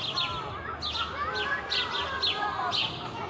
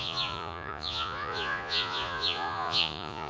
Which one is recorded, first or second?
first